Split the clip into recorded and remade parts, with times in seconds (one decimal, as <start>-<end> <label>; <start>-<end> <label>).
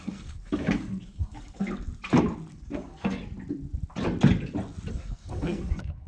0.0-1.9 remade; 1.9-2.5 recorded; 2.5-3.2 remade; 3.2-4.9 recorded; 4.9-6.1 remade